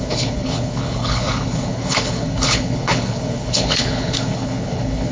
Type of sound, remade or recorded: remade